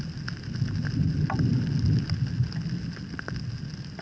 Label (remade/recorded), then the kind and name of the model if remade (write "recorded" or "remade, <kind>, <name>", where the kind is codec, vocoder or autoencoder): recorded